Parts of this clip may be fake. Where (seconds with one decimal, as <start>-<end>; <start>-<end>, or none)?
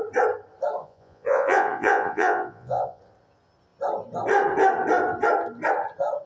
0.8-3.0